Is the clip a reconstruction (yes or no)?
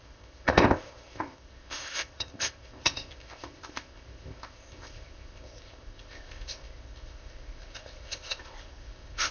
yes